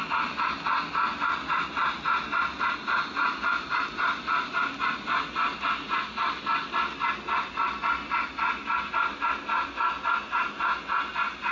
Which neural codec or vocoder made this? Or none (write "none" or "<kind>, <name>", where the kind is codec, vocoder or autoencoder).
none